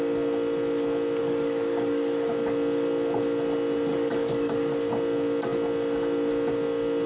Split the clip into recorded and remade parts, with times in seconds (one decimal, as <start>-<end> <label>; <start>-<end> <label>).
0.0-1.2 recorded; 1.2-2.3 remade; 2.3-3.9 recorded; 3.9-4.9 remade; 4.9-7.1 recorded